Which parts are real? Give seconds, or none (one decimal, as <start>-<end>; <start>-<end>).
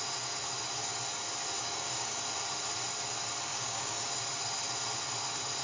0.0-1.6; 2.2-3.5; 4.2-5.6